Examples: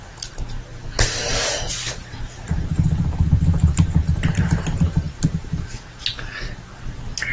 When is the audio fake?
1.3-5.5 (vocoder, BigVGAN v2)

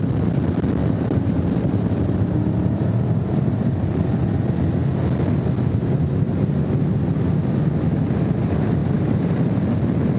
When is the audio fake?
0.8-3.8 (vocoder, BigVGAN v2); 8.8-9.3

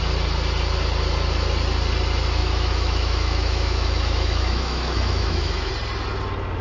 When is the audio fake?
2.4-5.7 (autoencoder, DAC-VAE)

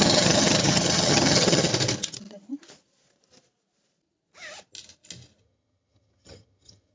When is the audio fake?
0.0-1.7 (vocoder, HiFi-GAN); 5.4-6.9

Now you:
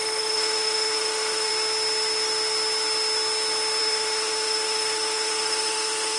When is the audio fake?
0.0-1.5 (autoencoder, DAC-VAE); 3.8-6.2

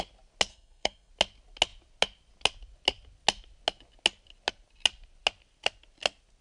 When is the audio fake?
0.5-1.1 (codec, SNAC)